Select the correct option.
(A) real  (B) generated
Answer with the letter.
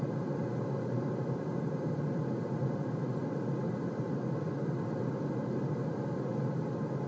A